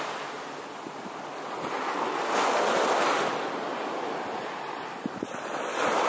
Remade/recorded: recorded